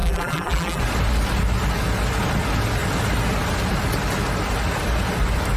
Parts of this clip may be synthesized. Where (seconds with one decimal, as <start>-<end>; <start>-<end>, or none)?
0.0-0.8